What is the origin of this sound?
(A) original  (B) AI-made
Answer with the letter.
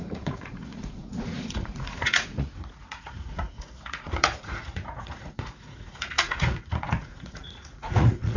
B